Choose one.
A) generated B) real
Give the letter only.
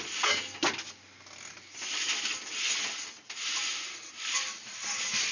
B